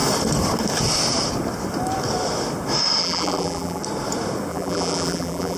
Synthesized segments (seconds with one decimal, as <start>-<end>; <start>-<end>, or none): 3.0-3.8; 4.5-5.6